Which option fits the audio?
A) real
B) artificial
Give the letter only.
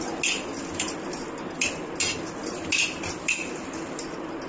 A